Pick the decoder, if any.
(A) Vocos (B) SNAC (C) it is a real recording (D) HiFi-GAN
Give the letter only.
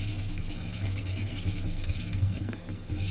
B